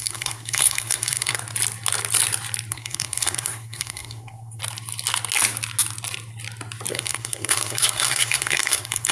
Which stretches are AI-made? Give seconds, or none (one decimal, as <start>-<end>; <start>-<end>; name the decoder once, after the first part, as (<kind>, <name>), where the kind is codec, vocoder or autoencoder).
0.0-1.4 (codec, SNAC); 2.7-4.6; 6.9-9.1